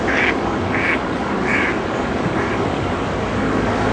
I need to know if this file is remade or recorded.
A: remade